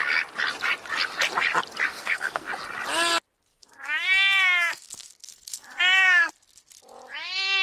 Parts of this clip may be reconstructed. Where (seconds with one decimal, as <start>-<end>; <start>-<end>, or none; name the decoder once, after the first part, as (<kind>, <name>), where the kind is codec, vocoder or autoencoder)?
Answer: 1.9-2.5 (codec, SNAC); 3.5-6.3